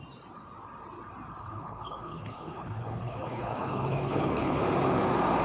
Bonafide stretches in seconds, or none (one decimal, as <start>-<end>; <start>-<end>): 0.0-1.4; 4.6-5.4